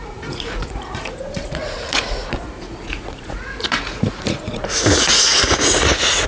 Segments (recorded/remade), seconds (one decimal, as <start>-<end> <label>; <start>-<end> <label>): 0.0-6.3 remade